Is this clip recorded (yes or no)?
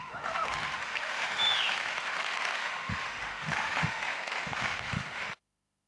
no